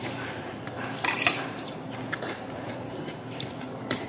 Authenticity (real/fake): fake